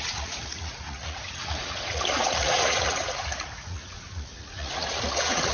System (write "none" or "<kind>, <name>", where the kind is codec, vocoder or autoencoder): vocoder, Vocos